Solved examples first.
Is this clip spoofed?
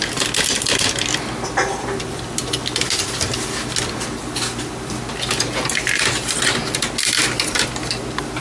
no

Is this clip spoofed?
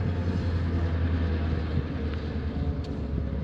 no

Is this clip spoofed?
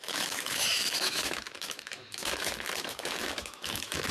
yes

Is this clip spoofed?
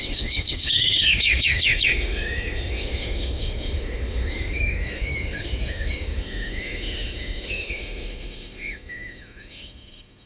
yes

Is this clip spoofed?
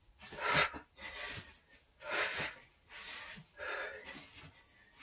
no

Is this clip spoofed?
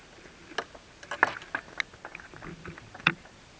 no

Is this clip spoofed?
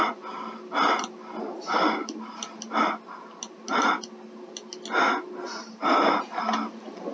no